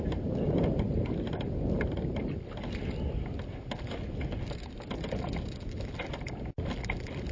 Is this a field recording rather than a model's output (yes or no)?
yes